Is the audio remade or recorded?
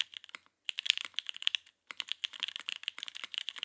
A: recorded